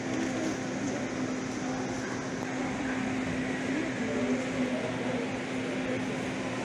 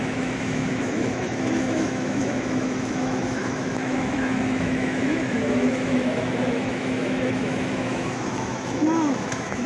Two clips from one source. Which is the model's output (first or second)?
second